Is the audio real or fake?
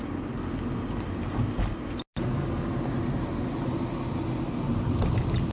real